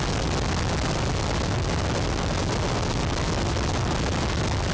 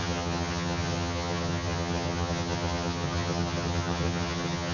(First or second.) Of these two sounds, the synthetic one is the second